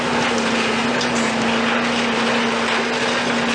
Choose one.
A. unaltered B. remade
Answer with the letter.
A